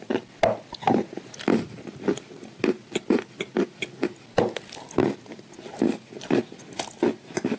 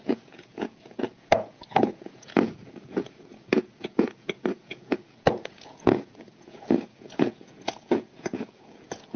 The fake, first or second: second